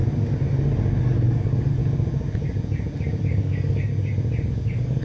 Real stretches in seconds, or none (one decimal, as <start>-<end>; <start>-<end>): 0.0-1.0; 1.8-3.2; 3.9-4.5